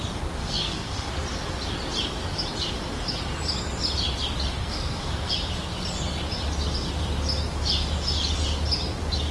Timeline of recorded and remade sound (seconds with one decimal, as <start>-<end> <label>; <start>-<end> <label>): 0.0-0.4 recorded; 0.4-1.1 remade; 1.1-4.6 recorded; 4.6-5.3 remade; 5.3-9.3 recorded